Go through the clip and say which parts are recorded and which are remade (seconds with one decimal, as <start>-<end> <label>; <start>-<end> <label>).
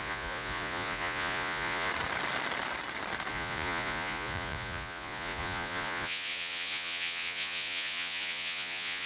0.0-1.9 remade; 1.9-3.3 recorded; 3.3-9.1 remade